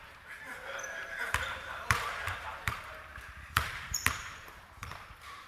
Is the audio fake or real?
fake